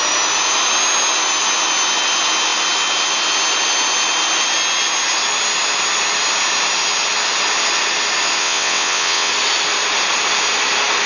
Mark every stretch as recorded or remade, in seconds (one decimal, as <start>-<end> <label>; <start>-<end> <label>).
0.0-8.4 recorded; 8.4-9.3 remade; 9.3-11.1 recorded